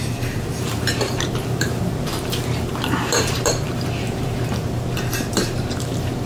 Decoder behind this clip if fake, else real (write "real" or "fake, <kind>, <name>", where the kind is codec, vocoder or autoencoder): fake, vocoder, BigVGAN v2